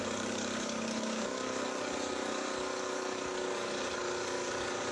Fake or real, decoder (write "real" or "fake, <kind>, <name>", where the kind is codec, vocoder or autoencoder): fake, codec, DAC